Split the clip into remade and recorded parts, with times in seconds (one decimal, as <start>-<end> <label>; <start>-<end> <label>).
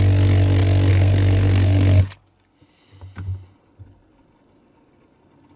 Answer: 0.0-0.9 recorded; 0.9-2.0 remade; 2.0-5.6 recorded